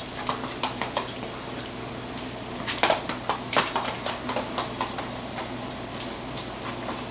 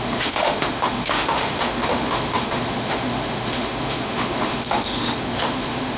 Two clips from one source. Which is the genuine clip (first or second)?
first